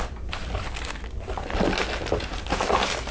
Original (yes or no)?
yes